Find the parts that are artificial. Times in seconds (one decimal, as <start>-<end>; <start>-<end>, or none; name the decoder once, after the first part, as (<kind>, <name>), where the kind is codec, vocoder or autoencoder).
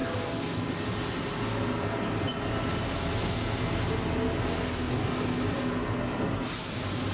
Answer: none